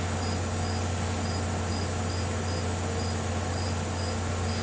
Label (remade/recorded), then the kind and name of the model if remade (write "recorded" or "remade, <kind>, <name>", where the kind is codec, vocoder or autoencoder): recorded